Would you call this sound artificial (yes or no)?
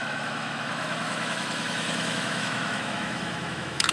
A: yes